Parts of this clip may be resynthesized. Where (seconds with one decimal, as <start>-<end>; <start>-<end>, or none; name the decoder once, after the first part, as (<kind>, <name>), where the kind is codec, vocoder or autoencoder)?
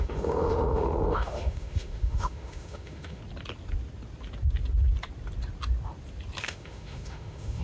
0.0-3.2 (autoencoder, DAC-VAE); 6.4-7.6